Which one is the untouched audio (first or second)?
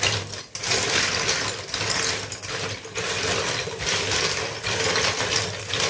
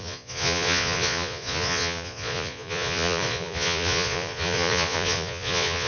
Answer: first